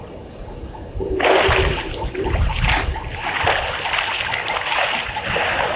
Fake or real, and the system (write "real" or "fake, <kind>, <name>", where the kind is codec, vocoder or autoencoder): real